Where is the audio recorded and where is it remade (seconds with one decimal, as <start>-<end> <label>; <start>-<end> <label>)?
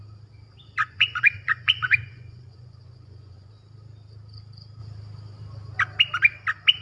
0.0-0.8 recorded; 0.8-3.5 remade; 3.5-6.8 recorded